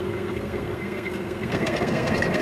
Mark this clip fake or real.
fake